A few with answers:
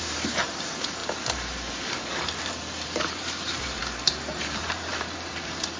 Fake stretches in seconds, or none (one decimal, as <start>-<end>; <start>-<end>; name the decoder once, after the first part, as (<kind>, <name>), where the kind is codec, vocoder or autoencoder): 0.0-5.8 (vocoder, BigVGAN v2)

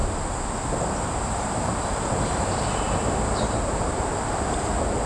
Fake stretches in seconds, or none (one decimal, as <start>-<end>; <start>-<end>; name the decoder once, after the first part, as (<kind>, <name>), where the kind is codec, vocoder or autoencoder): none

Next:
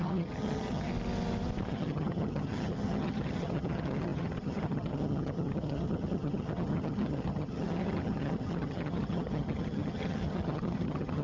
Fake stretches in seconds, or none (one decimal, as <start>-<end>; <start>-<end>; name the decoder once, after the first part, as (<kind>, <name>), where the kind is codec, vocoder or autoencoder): 0.0-0.9 (vocoder, HiFi-GAN); 1.7-11.2